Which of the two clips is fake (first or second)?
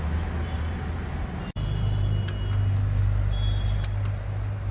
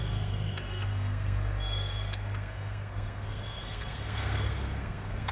second